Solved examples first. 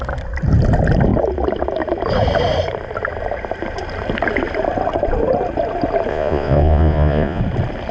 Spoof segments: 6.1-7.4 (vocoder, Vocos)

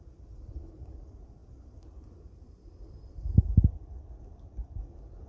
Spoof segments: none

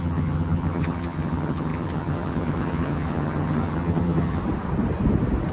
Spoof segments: 0.0-4.4 (vocoder, HiFi-GAN)

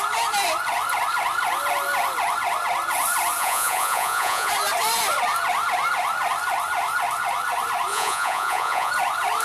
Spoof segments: 3.4-4.5 (vocoder, Vocos); 7.9-8.9

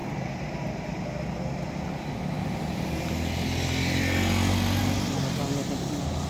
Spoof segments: none